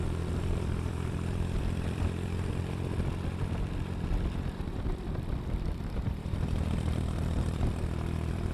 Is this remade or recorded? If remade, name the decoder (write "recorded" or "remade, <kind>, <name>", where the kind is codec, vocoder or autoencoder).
remade, vocoder, BigVGAN v2